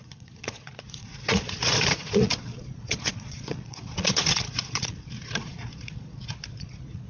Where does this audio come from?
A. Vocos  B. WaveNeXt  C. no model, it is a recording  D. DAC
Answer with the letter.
A